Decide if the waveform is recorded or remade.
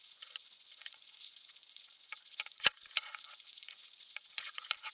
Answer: remade